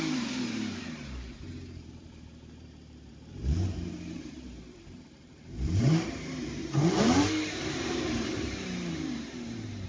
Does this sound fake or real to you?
fake